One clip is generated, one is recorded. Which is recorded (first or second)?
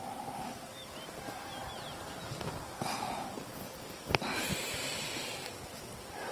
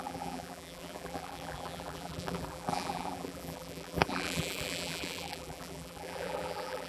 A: first